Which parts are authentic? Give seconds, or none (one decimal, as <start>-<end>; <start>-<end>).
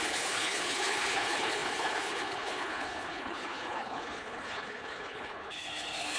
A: none